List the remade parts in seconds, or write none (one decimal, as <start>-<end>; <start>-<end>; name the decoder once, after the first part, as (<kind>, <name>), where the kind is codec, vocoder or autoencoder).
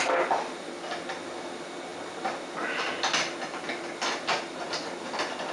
none